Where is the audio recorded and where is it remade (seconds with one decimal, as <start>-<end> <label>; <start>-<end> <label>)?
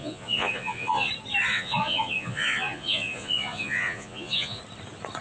0.0-1.1 remade; 1.1-1.5 recorded; 1.5-4.6 remade; 4.6-5.2 recorded